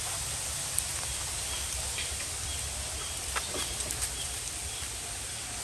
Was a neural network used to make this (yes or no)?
yes